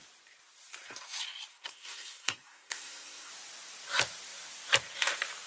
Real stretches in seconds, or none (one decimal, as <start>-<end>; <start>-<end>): 0.0-1.5; 3.3-5.5